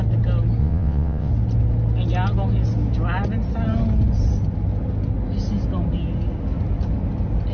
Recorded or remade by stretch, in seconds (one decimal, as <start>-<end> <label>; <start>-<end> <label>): 0.0-0.6 recorded; 0.6-1.3 remade; 1.3-7.5 recorded